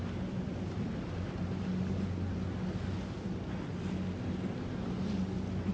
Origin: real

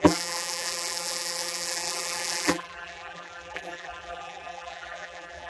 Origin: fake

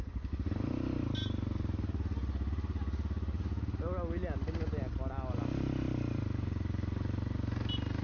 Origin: real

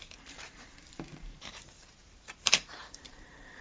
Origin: fake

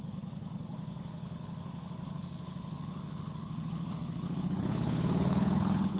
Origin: fake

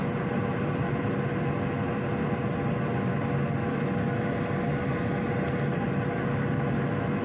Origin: real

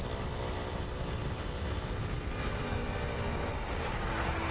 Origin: real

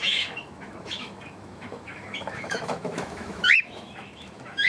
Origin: fake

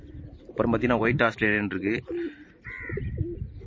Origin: fake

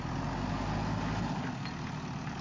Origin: real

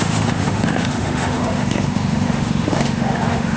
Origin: fake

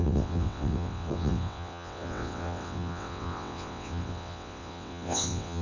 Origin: fake